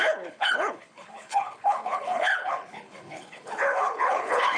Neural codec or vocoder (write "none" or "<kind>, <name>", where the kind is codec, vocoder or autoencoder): codec, HILCodec